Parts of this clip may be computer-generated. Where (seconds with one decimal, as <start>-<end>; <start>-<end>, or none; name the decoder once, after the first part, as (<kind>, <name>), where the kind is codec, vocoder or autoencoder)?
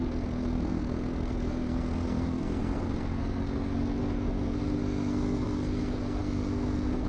0.0-7.1 (codec, SNAC)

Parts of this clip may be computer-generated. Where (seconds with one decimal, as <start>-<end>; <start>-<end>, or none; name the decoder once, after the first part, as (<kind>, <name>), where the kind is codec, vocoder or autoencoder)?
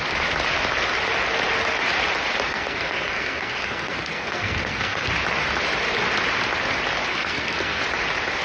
2.5-5.1 (codec, SNAC); 7.1-7.8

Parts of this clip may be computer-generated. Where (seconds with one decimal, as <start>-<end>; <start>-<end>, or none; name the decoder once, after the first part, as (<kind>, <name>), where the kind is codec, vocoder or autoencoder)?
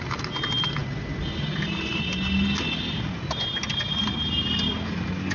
none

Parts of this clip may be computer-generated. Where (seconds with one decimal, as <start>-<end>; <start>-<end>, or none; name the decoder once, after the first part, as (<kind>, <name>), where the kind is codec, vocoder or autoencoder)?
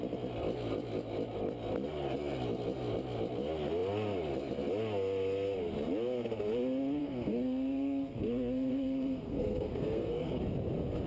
7.0-10.4 (codec, SNAC)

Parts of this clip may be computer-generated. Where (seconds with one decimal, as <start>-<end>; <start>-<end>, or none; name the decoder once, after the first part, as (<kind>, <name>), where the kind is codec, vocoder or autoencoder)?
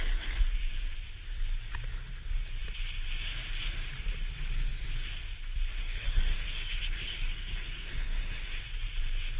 5.8-8.6 (codec, SNAC)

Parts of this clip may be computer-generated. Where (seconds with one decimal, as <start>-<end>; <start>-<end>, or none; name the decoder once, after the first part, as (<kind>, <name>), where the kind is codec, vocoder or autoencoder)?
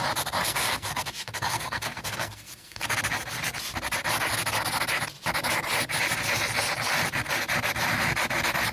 0.4-3.0 (codec, SNAC)